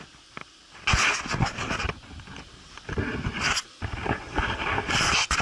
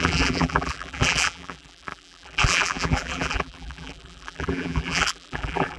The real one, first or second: first